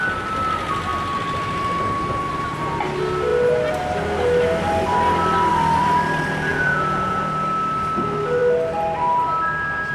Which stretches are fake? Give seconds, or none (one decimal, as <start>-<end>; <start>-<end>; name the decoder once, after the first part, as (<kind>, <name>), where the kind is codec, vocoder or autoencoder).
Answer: 6.5-7.2 (vocoder, Vocos)